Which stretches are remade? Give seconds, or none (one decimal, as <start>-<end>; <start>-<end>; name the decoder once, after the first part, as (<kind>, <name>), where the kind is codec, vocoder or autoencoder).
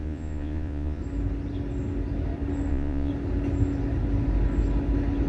0.0-1.0 (vocoder, Vocos); 2.7-3.1